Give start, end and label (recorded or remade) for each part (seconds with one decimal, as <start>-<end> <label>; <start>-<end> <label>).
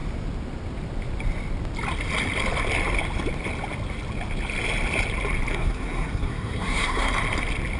0.0-5.5 recorded; 5.5-7.1 remade; 7.1-7.8 recorded